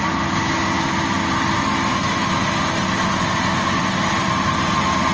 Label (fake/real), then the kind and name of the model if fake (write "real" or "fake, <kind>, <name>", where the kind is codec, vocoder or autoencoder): real